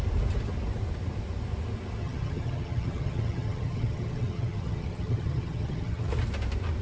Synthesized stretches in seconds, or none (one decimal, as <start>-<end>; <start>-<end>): 2.0-6.1